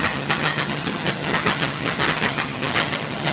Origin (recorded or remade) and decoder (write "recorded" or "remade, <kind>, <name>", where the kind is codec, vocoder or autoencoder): remade, vocoder, HiFi-GAN